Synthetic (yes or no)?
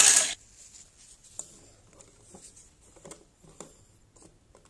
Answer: no